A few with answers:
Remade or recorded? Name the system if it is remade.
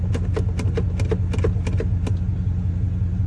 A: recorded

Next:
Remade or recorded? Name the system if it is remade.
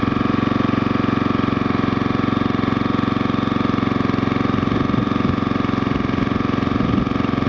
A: recorded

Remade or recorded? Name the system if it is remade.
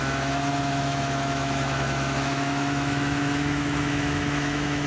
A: remade, autoencoder, DAC-VAE